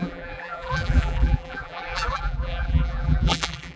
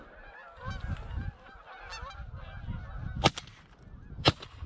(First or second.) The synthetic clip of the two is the first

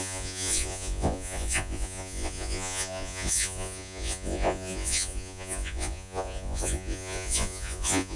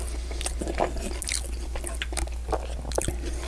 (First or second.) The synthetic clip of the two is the first